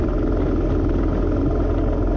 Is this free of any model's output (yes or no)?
yes